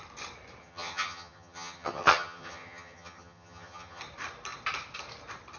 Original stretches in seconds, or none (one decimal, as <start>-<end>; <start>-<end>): 0.0-0.6; 4.0-5.6